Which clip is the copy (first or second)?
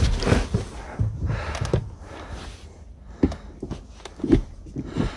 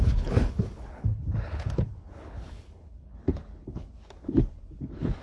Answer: second